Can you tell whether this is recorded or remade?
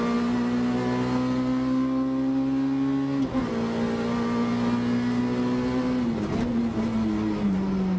recorded